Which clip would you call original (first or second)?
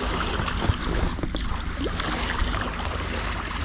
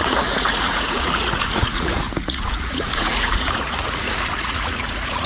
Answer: first